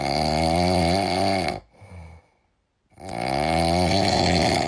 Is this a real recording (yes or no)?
yes